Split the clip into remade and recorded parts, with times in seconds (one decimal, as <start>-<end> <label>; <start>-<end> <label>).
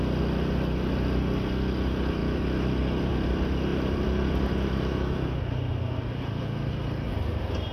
0.0-3.7 recorded; 3.7-4.7 remade; 4.7-7.7 recorded